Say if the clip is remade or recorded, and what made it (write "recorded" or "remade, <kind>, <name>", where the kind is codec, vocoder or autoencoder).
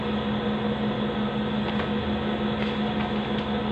recorded